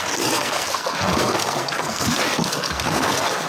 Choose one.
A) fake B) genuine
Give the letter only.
A